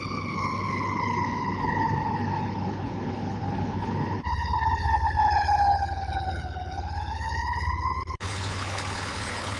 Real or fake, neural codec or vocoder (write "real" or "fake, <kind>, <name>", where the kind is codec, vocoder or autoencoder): fake, codec, HILCodec